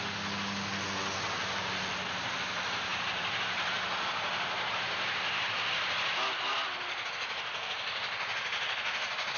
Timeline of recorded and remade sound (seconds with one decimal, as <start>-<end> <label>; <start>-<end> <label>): 0.0-9.4 recorded